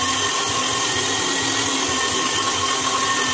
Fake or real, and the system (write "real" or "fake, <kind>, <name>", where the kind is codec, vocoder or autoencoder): real